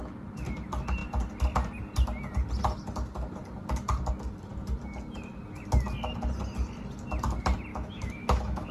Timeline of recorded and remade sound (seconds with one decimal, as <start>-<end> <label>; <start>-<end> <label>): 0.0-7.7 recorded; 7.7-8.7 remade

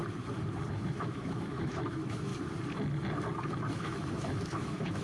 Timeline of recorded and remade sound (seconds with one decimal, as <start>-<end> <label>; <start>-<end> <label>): 0.0-0.7 recorded; 0.7-2.3 remade; 2.3-3.7 recorded; 3.7-5.0 remade

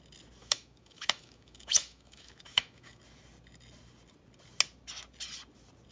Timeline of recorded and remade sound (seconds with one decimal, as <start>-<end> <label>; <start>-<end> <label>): 0.0-0.4 recorded; 0.4-3.0 remade; 3.0-5.9 recorded